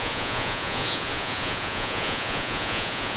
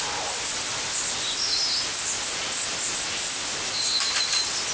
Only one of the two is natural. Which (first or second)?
second